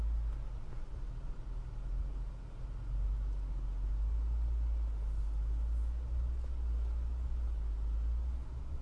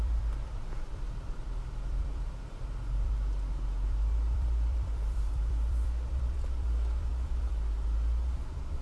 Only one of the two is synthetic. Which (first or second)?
second